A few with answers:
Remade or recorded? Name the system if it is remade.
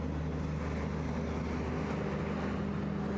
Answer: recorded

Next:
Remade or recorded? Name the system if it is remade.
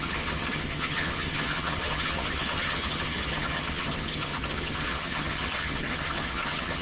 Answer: remade, vocoder, HiFi-GAN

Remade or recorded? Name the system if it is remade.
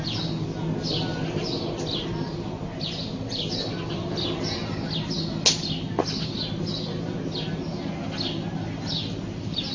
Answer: recorded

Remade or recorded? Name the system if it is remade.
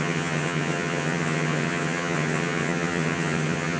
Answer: remade, vocoder, HiFi-GAN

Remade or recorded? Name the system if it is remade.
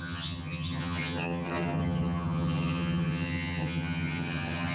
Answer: remade, vocoder, HiFi-GAN